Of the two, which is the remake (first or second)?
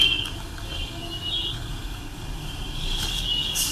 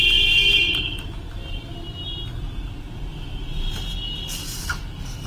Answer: first